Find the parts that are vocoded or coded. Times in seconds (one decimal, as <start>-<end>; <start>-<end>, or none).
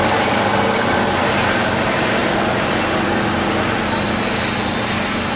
0.0-0.5